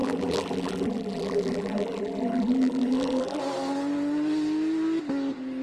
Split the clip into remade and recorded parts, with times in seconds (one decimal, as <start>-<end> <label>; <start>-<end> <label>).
0.0-3.4 remade; 3.4-5.6 recorded